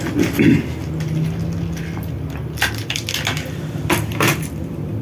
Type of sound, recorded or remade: recorded